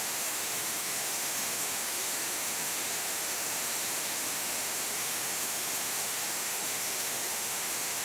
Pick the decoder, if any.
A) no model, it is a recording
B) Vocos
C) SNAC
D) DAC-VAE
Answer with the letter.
D